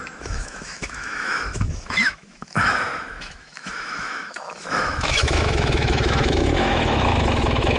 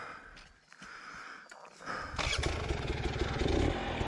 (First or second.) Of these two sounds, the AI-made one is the first